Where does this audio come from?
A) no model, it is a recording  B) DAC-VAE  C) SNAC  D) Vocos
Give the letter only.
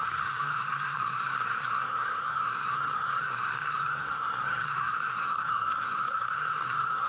C